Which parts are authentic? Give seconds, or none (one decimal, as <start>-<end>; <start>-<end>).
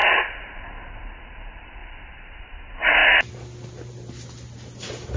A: 0.7-1.8; 2.4-5.2